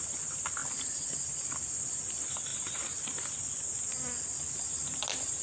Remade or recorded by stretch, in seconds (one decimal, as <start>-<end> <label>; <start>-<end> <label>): 0.0-5.4 recorded